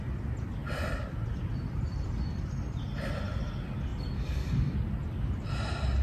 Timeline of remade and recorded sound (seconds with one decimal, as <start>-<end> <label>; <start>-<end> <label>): 0.0-0.6 recorded; 0.6-3.5 remade; 3.5-6.0 recorded